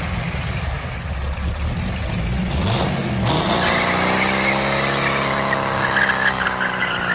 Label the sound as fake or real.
real